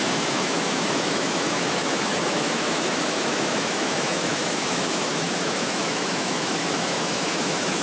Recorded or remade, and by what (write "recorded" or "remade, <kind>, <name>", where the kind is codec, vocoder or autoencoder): remade, autoencoder, DAC-VAE